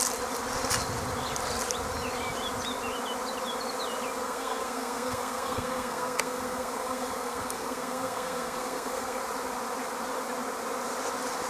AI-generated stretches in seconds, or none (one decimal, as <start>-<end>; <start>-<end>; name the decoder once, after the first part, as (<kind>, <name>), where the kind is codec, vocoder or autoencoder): 4.2-9.2 (codec, SNAC)